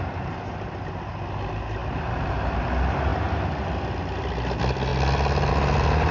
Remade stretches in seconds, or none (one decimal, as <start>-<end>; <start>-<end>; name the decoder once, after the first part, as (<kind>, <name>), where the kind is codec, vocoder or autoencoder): none